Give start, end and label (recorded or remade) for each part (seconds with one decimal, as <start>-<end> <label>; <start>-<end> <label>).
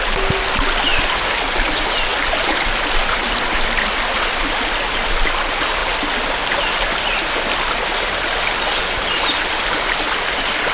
0.0-0.9 recorded; 0.9-1.7 remade; 1.7-2.1 recorded; 2.1-4.4 remade; 4.4-10.7 recorded